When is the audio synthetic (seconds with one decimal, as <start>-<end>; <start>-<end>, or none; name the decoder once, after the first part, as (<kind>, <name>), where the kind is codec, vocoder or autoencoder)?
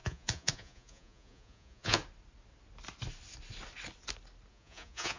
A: 0.0-2.0 (vocoder, Vocos); 4.5-5.2